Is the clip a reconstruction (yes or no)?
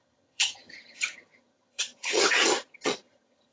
yes